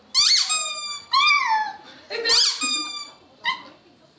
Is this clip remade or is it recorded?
recorded